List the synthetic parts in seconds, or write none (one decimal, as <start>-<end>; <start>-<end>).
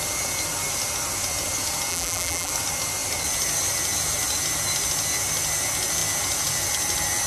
1.9-2.5